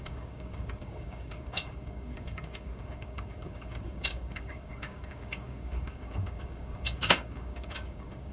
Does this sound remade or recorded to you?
remade